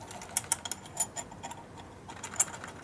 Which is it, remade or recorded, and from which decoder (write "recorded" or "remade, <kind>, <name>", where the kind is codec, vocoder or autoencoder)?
recorded